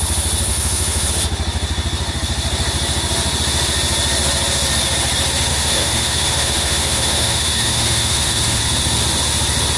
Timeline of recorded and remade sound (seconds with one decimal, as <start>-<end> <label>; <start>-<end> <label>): 0.0-0.5 recorded; 0.5-1.1 remade; 1.1-5.5 recorded; 5.5-8.6 remade; 8.6-9.8 recorded

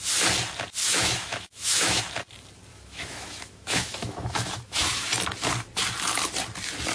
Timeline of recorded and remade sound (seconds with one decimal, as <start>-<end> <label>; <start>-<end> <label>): 0.0-0.8 recorded; 0.8-2.0 remade; 2.0-2.7 recorded; 2.7-5.1 remade; 5.1-6.9 recorded

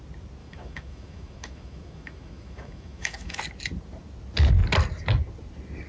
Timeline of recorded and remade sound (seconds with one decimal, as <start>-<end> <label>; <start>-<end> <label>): 0.0-0.4 recorded; 0.4-3.4 remade; 3.4-5.9 recorded

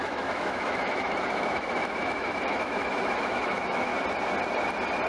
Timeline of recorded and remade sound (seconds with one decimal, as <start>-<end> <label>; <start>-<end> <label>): 0.0-3.9 remade; 3.9-5.1 recorded

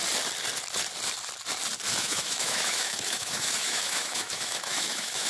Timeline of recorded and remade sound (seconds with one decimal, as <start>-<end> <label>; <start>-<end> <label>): 0.0-1.9 recorded; 1.9-5.3 remade

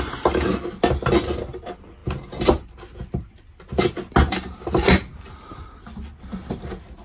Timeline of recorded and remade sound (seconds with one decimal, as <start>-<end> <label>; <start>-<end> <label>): 0.0-7.0 recorded